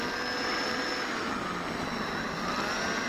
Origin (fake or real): real